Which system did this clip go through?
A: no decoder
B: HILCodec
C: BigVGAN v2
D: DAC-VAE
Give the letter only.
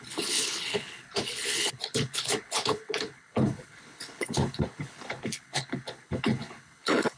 B